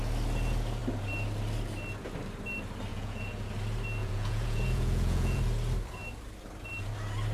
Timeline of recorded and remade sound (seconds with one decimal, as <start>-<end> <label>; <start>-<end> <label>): 0.0-2.9 recorded; 2.9-3.5 remade; 3.5-4.0 recorded; 4.0-5.4 remade; 5.4-7.3 recorded